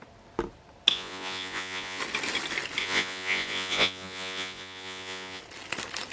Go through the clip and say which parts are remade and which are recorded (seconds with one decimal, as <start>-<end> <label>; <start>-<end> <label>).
0.0-0.9 recorded; 0.9-2.0 remade; 2.0-2.8 recorded; 2.8-5.4 remade; 5.4-6.1 recorded